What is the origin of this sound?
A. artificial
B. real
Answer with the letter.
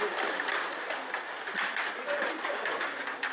B